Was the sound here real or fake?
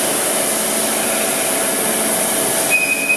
real